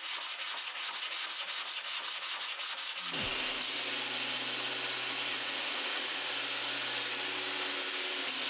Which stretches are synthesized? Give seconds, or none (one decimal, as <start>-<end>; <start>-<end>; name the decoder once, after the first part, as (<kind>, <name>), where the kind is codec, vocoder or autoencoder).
5.3-6.3 (vocoder, Vocos)